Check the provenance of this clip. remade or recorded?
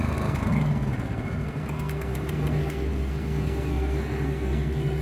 remade